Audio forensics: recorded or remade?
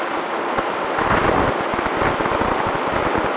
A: recorded